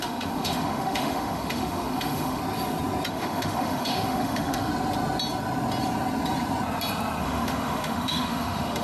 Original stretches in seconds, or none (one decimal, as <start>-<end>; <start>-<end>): 2.4-3.1; 4.7-7.2